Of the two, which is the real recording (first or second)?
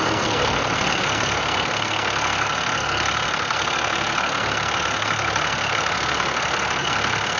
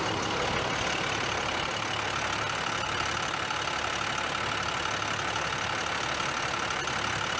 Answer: second